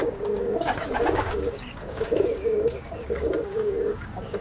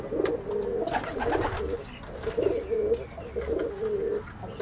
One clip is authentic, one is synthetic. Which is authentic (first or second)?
second